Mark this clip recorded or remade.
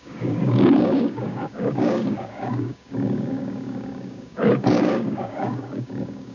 remade